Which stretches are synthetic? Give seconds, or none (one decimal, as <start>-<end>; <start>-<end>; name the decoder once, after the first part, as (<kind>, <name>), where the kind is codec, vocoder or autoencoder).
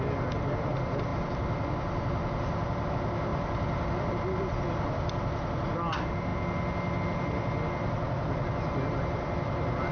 none